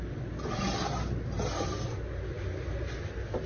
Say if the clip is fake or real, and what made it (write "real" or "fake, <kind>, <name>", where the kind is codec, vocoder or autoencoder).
real